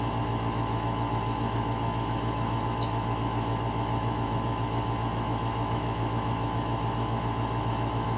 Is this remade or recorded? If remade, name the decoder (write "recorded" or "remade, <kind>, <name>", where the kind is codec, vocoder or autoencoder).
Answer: remade, autoencoder, DAC-VAE